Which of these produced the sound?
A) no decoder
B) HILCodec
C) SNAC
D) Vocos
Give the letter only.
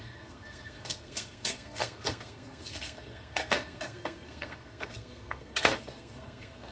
C